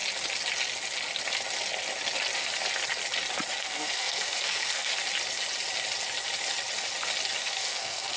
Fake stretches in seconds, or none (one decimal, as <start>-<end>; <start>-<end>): 3.6-4.9; 7.4-8.2